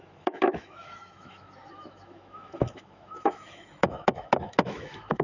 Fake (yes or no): yes